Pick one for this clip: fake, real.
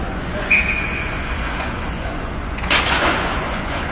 fake